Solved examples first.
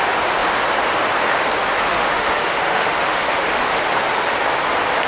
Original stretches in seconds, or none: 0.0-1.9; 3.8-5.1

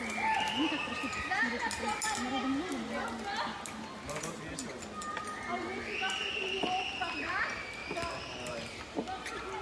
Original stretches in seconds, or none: 0.0-9.6

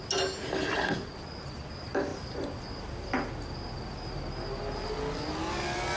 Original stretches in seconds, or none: 0.0-6.0